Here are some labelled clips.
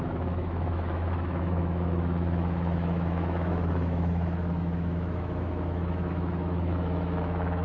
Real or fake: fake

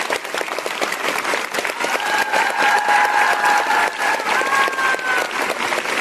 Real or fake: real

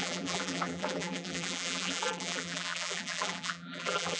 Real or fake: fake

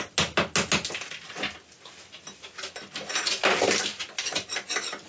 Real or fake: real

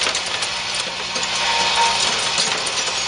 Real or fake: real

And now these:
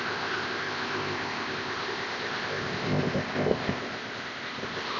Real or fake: fake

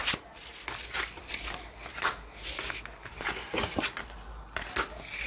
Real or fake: real